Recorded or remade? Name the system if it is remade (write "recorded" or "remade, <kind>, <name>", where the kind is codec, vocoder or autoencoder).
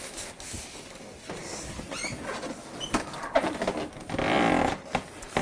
recorded